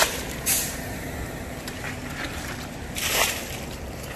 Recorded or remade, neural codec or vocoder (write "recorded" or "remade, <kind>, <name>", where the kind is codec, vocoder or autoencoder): recorded